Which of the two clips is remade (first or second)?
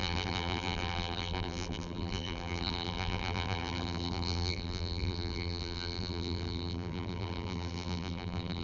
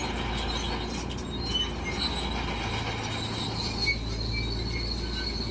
first